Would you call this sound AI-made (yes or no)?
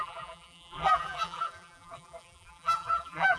yes